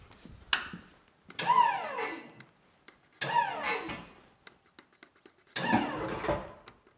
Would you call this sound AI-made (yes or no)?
no